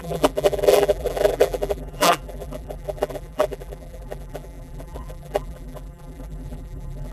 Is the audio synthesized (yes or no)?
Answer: yes